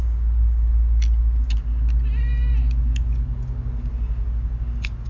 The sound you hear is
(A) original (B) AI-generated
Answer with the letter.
A